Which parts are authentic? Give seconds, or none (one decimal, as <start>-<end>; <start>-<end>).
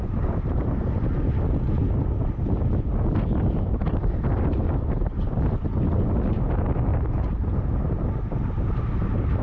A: 0.0-9.4